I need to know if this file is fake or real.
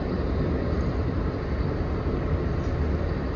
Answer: real